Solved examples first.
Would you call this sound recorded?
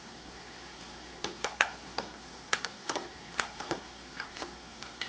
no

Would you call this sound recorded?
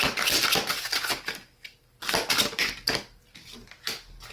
yes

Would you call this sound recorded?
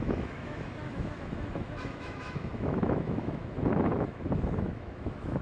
no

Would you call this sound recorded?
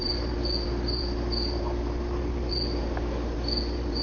yes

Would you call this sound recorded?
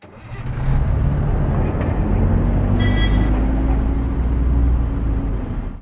yes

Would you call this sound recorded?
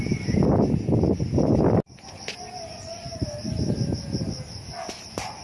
yes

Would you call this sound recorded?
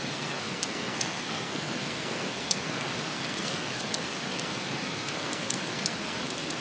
no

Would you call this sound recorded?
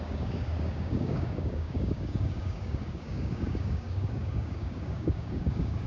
no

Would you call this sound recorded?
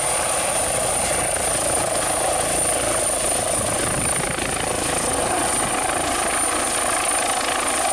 yes